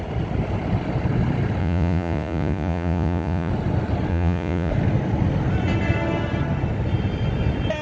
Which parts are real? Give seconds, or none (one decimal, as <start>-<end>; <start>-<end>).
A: 0.0-1.6; 3.5-4.1; 4.7-7.8